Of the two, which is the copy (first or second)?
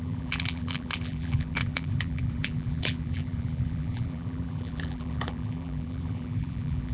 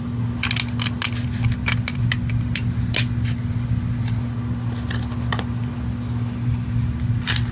first